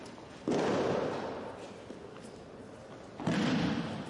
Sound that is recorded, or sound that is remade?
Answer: recorded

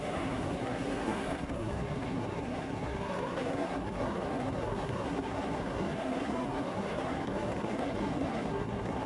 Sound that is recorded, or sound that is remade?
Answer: remade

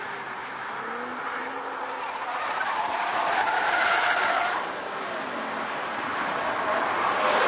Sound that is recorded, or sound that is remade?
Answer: recorded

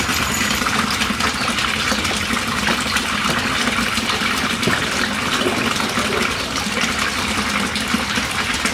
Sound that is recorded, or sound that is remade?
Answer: recorded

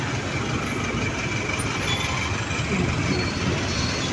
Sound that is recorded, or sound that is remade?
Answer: recorded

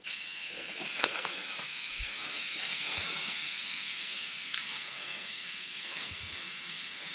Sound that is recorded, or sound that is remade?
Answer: remade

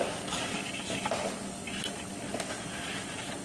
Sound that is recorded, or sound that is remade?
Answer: recorded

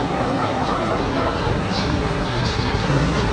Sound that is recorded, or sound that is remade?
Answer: remade